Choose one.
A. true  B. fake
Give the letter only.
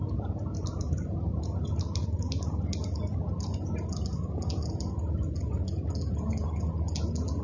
A